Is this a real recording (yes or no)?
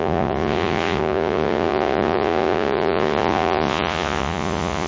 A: no